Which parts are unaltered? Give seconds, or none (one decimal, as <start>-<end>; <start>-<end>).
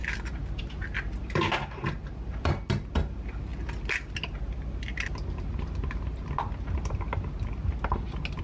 0.0-8.4